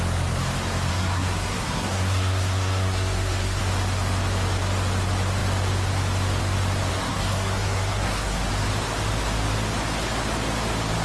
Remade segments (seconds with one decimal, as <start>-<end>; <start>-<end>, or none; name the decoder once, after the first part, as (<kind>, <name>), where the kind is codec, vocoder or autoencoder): 0.9-3.6 (codec, SNAC); 6.9-8.5